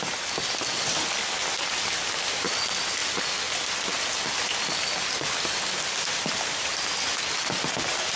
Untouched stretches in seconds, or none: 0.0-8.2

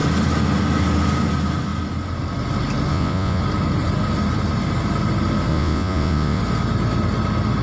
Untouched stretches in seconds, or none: 0.0-2.9; 3.4-5.5; 6.4-7.6

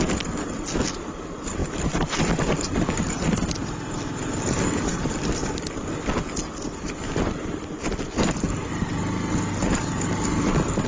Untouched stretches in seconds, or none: 0.0-10.9

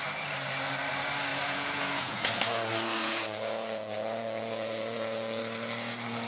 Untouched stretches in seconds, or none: 0.0-1.3; 2.3-3.0; 5.4-6.3